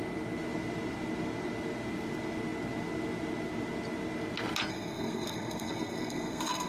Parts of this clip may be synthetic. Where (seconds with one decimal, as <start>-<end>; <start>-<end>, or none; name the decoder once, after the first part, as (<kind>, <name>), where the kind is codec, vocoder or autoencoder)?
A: 4.7-6.7 (codec, SNAC)